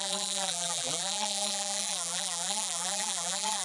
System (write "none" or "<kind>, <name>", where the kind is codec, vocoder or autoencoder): vocoder, BigVGAN v2